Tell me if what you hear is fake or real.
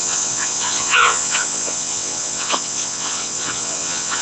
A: fake